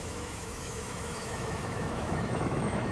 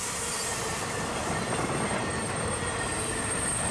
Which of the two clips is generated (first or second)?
first